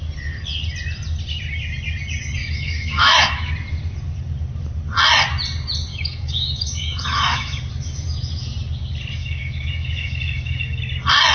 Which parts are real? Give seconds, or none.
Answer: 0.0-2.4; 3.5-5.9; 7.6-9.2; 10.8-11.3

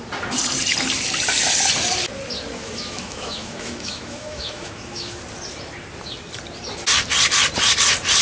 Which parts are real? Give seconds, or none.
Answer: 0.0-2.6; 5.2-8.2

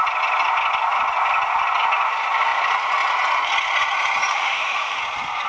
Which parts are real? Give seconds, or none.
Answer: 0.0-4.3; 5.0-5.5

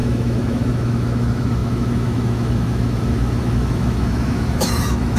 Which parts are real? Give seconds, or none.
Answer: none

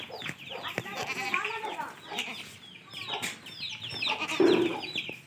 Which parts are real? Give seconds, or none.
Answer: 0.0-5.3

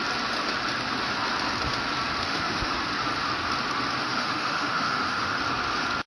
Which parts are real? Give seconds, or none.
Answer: 0.0-2.2; 2.8-4.0; 5.4-6.1